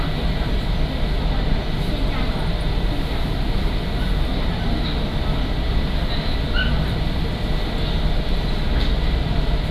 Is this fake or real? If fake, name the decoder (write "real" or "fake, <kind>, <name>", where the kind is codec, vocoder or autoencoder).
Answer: real